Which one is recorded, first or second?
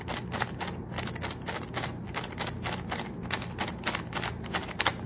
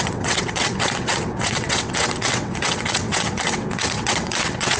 first